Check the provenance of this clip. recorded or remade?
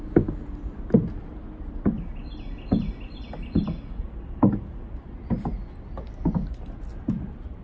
recorded